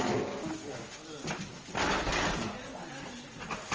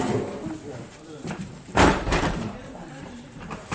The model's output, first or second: second